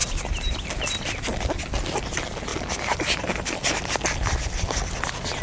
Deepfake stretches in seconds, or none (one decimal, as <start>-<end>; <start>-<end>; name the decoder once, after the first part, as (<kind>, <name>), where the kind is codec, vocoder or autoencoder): none

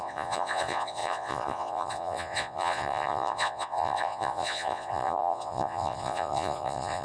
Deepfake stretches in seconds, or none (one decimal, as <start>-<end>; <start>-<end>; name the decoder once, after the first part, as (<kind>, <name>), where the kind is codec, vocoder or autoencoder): 0.0-7.0 (vocoder, Vocos)

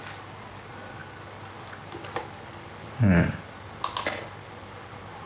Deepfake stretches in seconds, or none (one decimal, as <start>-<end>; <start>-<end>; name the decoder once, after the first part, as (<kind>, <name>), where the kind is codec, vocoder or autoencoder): none

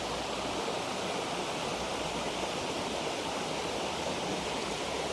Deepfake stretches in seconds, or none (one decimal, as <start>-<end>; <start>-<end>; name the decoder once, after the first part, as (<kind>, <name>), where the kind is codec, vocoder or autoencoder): none

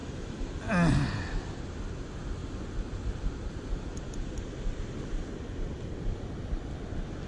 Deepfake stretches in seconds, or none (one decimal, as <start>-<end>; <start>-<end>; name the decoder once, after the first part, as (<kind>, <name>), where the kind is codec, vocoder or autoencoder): 0.0-0.5 (autoencoder, DAC-VAE)